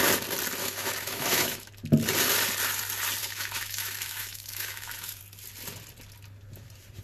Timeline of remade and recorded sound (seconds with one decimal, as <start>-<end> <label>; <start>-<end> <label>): 0.0-0.6 recorded; 0.6-1.7 remade; 1.7-3.2 recorded; 3.2-5.2 remade; 5.2-7.0 recorded